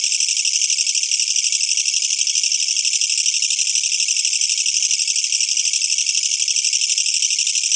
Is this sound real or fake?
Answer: real